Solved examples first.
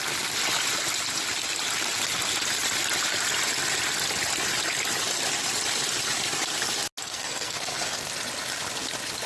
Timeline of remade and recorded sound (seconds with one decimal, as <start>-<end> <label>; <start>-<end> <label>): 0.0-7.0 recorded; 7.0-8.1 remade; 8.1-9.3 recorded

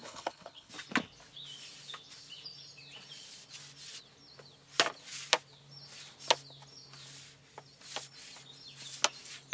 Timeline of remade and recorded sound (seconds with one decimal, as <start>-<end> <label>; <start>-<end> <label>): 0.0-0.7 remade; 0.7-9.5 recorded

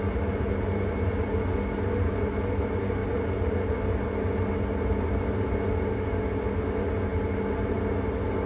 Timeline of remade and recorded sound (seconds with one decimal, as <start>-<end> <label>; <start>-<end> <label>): 0.0-8.5 recorded

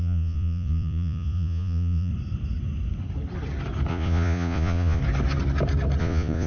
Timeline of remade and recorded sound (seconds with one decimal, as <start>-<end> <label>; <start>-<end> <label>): 0.0-2.1 remade; 2.1-3.9 recorded; 3.9-5.0 remade; 5.0-6.0 recorded; 6.0-6.5 remade

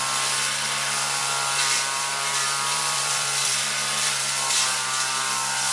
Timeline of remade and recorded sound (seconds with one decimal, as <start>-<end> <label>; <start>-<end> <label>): 0.0-1.2 recorded; 1.2-4.6 remade; 4.6-5.7 recorded

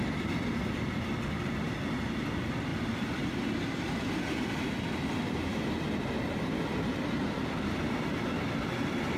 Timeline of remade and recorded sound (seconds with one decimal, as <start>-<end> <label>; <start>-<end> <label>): 0.0-2.7 recorded; 2.7-3.4 remade; 3.4-5.5 recorded; 5.5-6.1 remade; 6.1-9.2 recorded